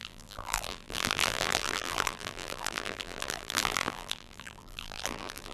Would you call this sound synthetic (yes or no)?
yes